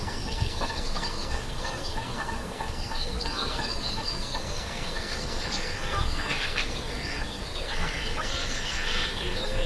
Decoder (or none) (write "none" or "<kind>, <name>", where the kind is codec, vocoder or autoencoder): codec, SNAC